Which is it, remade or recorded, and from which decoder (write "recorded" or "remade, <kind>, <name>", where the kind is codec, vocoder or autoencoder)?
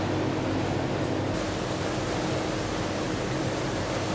recorded